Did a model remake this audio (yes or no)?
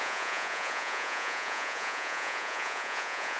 yes